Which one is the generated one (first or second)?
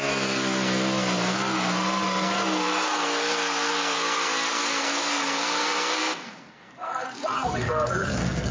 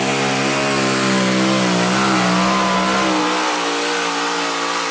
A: first